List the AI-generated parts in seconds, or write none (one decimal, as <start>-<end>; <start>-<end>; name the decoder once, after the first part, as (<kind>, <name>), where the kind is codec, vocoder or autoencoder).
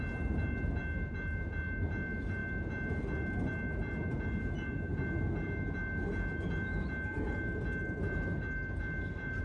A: none